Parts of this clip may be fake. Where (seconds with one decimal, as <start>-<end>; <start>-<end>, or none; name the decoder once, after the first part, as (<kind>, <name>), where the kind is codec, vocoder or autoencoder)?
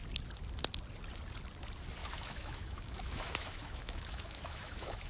2.0-5.1 (autoencoder, DAC-VAE)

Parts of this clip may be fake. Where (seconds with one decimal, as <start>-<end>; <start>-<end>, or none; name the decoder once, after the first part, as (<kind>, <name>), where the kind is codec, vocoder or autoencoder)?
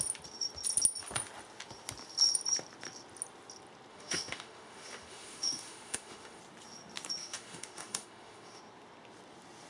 3.9-6.4 (autoencoder, DAC-VAE); 7.2-8.6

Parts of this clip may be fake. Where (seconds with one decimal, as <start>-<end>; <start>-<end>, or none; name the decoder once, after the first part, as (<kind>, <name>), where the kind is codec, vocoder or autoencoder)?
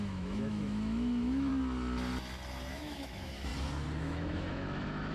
0.0-1.5 (autoencoder, DAC-VAE); 2.7-3.5; 4.0-5.1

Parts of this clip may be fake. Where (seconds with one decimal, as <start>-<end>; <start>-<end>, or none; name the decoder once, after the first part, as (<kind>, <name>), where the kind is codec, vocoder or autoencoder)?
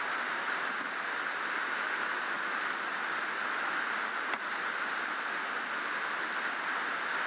none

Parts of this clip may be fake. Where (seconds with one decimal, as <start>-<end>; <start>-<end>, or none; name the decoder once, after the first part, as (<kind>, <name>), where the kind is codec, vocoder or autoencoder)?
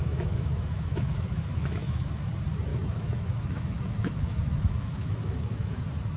0.0-2.3 (autoencoder, DAC-VAE); 2.7-5.8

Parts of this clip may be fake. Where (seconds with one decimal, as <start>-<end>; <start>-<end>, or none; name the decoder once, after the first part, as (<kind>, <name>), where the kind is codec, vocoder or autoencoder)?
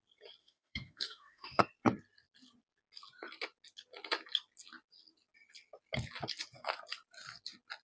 0.4-1.6 (autoencoder, DAC-VAE)